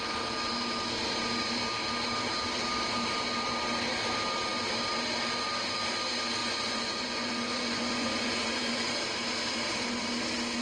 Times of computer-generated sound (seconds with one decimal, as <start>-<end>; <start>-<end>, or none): 6.4-9.0